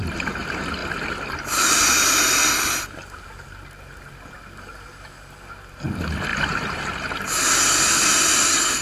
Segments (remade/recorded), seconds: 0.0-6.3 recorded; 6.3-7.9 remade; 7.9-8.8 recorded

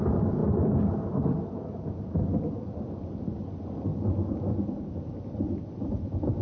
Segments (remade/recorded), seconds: 0.0-6.4 recorded

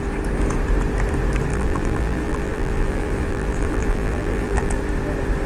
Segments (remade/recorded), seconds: 0.0-1.5 recorded; 1.5-4.8 remade; 4.8-5.5 recorded

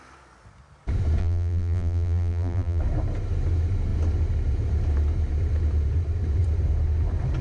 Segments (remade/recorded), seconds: 0.0-1.2 recorded; 1.2-2.8 remade; 2.8-7.4 recorded

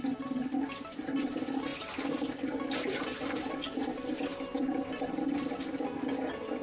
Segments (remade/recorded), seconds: 0.0-6.6 recorded

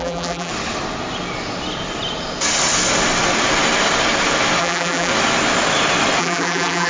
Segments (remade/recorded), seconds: 0.0-0.5 remade; 0.5-4.6 recorded; 4.6-5.1 remade; 5.1-6.2 recorded; 6.2-6.9 remade